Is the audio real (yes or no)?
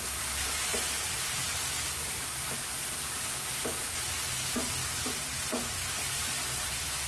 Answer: no